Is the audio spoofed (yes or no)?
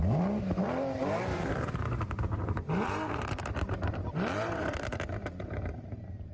yes